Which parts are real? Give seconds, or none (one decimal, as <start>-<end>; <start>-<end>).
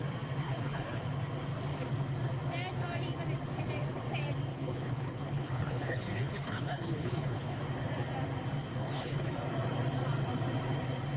0.0-0.4; 1.0-4.5; 7.6-8.8; 9.3-11.2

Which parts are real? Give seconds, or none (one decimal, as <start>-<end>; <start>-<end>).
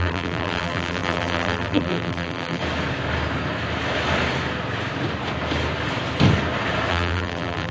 2.6-6.9